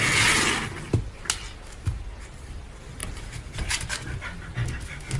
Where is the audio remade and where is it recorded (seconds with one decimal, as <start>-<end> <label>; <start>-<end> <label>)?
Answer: 0.0-3.0 recorded; 3.0-3.7 remade; 3.7-5.2 recorded